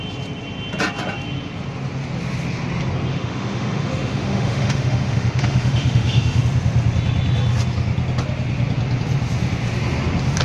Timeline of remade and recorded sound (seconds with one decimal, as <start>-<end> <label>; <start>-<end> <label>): 0.0-3.1 recorded; 3.1-6.4 remade; 6.4-10.4 recorded